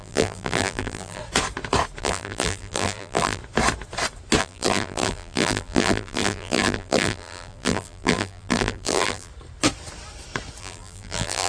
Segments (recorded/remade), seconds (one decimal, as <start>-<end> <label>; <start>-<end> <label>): 0.0-1.2 remade; 1.2-2.0 recorded; 2.0-3.4 remade; 3.4-4.4 recorded; 4.4-9.3 remade; 9.3-10.6 recorded; 10.6-11.5 remade